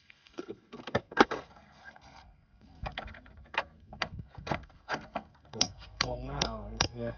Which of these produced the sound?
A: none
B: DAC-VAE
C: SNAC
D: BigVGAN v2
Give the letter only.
C